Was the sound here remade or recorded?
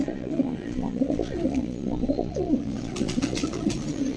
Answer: remade